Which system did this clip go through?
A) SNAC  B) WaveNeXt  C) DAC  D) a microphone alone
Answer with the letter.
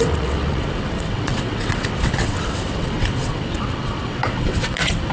B